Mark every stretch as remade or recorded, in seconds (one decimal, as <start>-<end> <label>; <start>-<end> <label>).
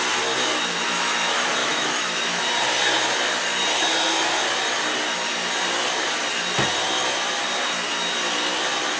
0.0-1.6 recorded; 1.6-2.4 remade; 2.4-9.0 recorded